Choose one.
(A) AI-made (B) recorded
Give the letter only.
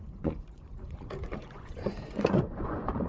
A